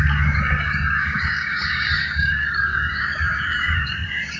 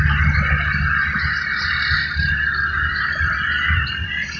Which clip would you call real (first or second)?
second